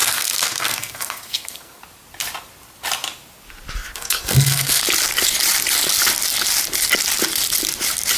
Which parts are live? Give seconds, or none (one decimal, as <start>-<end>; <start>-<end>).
1.8-3.8; 4.8-8.2